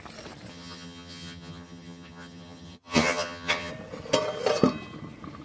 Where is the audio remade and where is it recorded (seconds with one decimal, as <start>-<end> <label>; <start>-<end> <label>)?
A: 0.0-0.5 recorded; 0.5-3.7 remade; 3.7-5.4 recorded